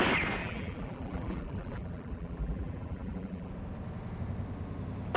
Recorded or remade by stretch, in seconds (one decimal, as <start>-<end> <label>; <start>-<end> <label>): 0.0-0.4 recorded; 0.4-3.5 remade; 3.5-5.2 recorded